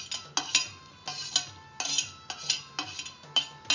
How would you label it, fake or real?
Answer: real